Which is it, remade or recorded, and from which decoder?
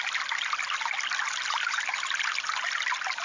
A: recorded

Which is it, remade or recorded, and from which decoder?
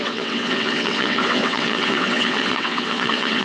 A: remade, vocoder, WaveNeXt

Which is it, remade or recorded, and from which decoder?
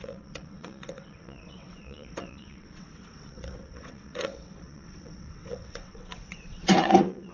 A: remade, vocoder, WaveNeXt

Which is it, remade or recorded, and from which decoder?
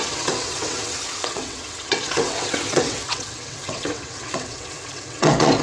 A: remade, vocoder, WaveNeXt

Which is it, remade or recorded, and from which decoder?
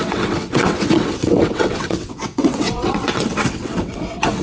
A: remade, vocoder, WaveNeXt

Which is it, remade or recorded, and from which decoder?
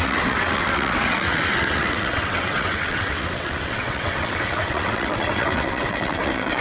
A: remade, vocoder, WaveNeXt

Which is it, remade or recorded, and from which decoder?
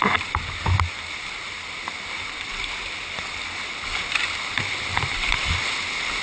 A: recorded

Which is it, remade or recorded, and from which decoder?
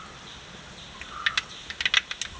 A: recorded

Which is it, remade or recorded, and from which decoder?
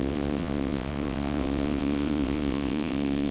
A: remade, vocoder, WaveNeXt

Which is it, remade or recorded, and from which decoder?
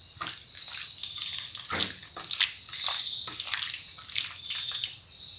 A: recorded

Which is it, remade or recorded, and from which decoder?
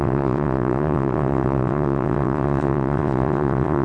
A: remade, vocoder, WaveNeXt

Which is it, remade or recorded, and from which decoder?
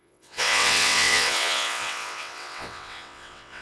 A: remade, vocoder, WaveNeXt